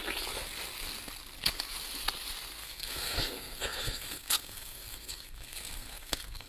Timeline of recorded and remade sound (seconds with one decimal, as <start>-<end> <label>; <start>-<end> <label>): 0.0-2.6 recorded; 2.6-6.5 remade